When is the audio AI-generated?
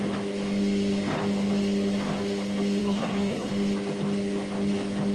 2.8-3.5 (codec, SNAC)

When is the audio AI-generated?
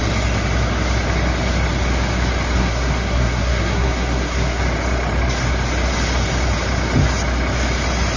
2.6-4.6 (codec, SNAC)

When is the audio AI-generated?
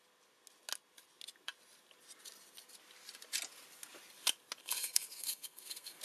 4.6-6.0 (codec, SNAC)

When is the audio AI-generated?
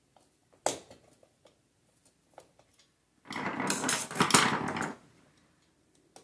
none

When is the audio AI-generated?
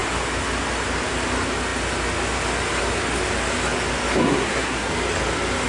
4.2-4.9 (codec, SNAC)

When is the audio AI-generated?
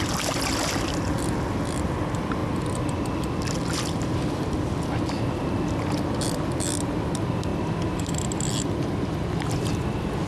none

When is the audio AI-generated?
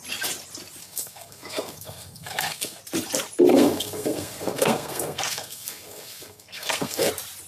0.8-2.8 (codec, SNAC); 3.5-7.1